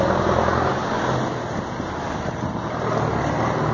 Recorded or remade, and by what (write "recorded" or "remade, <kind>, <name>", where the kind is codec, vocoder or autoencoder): recorded